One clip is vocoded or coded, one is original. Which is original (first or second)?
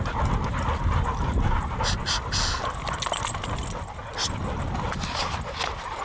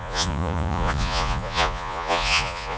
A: first